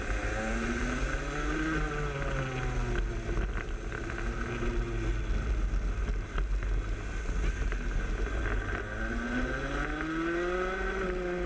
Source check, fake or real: real